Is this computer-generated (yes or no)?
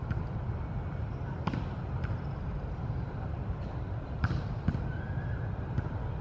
yes